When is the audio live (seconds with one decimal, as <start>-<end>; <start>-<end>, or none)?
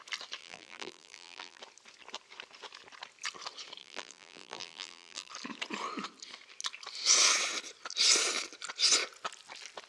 0.0-0.4; 1.6-3.8; 5.3-9.9